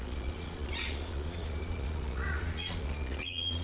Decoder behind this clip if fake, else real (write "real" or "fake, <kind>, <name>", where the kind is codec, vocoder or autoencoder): fake, vocoder, Vocos